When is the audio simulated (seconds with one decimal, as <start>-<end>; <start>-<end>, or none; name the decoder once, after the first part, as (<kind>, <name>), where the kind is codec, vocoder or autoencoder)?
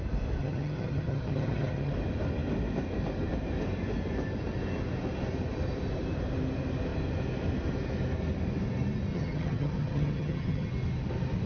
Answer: 0.4-1.9 (vocoder, HiFi-GAN); 9.1-10.7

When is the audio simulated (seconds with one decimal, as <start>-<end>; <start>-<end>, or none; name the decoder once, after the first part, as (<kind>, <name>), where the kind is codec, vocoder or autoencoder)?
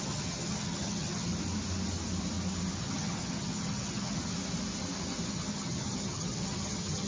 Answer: 0.0-1.3 (vocoder, HiFi-GAN); 2.8-4.3; 5.3-7.1